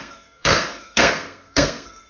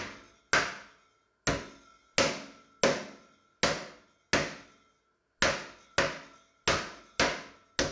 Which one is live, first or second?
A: second